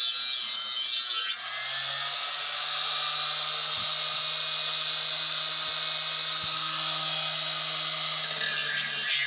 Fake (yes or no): no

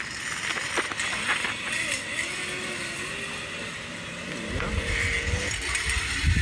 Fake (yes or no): no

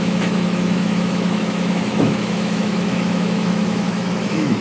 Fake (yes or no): yes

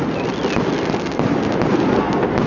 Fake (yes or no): no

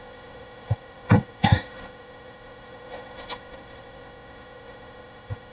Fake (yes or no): yes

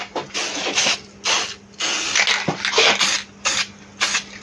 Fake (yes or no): no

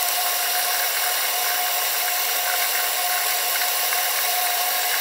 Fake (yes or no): no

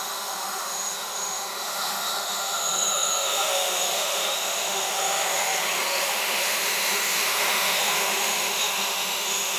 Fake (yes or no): yes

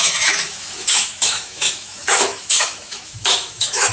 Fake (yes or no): yes